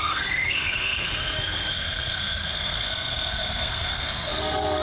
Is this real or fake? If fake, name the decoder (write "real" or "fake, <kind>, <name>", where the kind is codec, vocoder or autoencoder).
fake, codec, SNAC